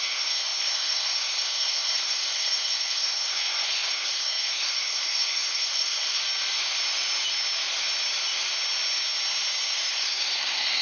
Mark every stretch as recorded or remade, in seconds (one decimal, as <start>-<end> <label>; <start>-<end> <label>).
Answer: 0.0-6.2 remade; 6.2-9.9 recorded; 9.9-10.8 remade